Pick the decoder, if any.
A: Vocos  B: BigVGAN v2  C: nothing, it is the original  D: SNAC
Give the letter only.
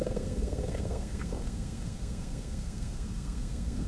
D